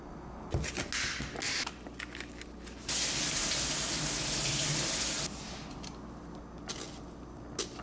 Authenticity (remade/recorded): recorded